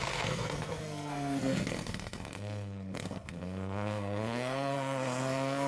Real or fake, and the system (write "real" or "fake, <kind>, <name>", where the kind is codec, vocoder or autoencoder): fake, codec, SNAC